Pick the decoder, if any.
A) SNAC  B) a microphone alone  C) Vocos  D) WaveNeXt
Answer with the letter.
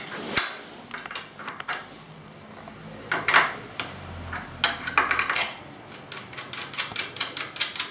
B